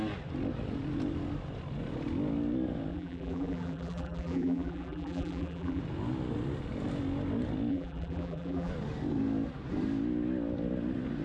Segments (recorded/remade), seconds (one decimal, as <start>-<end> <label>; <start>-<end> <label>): 0.0-2.9 recorded; 2.9-5.8 remade; 5.8-7.7 recorded; 7.7-8.7 remade; 8.7-11.2 recorded